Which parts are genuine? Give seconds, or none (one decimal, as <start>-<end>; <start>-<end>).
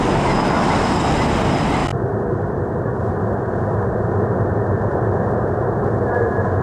0.0-1.8; 3.1-6.6